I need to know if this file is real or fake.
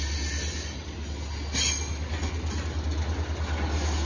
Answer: real